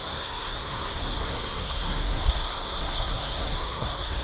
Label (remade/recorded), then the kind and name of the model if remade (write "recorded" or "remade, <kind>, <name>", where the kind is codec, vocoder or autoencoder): remade, codec, SNAC